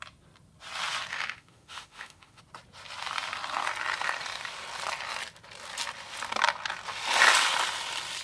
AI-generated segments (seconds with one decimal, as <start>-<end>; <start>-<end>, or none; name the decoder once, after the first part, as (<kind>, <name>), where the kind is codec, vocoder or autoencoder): 1.1-2.4 (autoencoder, DAC-VAE)